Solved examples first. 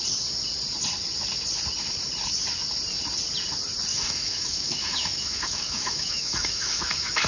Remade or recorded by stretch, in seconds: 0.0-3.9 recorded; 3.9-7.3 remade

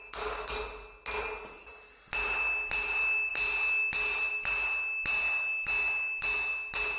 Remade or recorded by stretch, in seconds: 0.0-5.1 recorded; 5.1-6.5 remade; 6.5-7.0 recorded

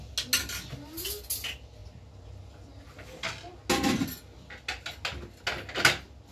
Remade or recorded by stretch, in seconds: 0.0-6.3 recorded

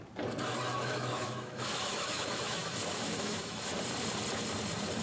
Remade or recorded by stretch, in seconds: 0.0-0.7 recorded; 0.7-3.7 remade; 3.7-5.0 recorded

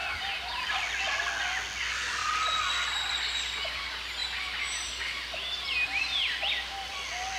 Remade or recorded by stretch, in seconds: 0.0-7.4 recorded

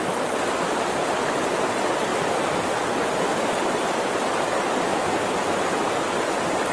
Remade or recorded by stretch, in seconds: 0.0-4.9 recorded; 4.9-5.6 remade; 5.6-6.7 recorded